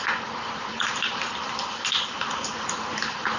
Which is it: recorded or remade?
remade